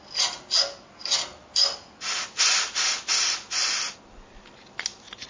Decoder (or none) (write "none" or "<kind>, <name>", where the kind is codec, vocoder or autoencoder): none